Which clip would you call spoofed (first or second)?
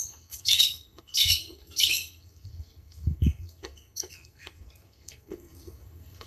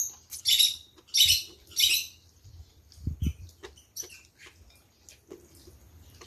first